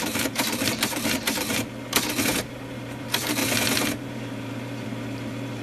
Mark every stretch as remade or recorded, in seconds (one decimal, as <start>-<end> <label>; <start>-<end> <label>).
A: 0.0-1.5 remade; 1.5-2.4 recorded; 2.4-3.4 remade; 3.4-4.0 recorded; 4.0-5.6 remade